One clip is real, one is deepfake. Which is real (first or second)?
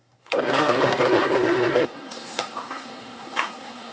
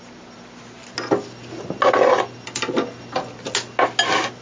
second